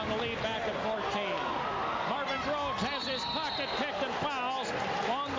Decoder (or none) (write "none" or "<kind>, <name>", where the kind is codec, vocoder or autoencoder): none